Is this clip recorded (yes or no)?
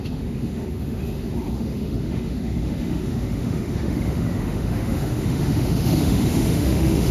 no